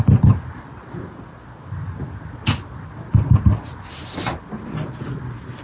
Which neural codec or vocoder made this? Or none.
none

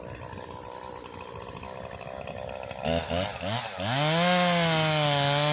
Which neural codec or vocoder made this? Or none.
none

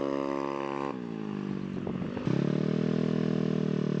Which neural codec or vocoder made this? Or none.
none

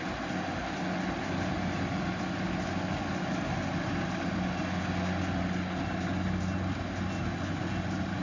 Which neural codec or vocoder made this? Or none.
none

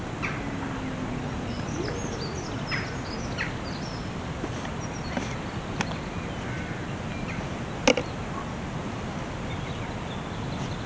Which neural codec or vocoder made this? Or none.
none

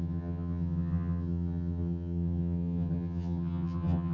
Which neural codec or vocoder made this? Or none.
vocoder, HiFi-GAN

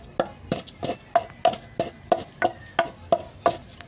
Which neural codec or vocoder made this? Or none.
none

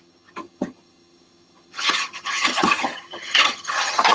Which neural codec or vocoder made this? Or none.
vocoder, HiFi-GAN